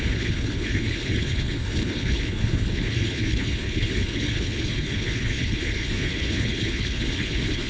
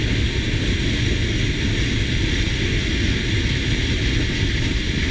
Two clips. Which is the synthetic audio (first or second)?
first